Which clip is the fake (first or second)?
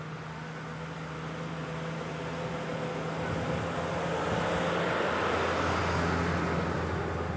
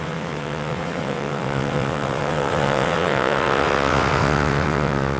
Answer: second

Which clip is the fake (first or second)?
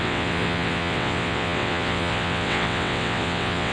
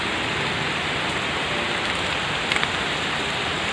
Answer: first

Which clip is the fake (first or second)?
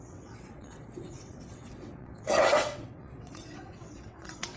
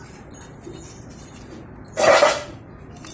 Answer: first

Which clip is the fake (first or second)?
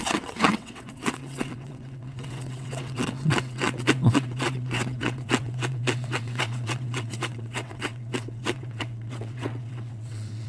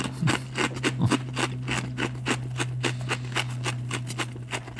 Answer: first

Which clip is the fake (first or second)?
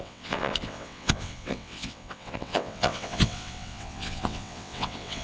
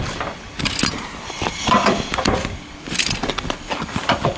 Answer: first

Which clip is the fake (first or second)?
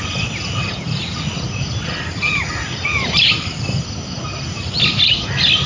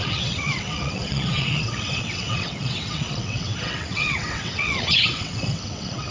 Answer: second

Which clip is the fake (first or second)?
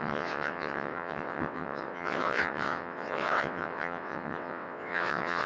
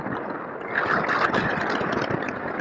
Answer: first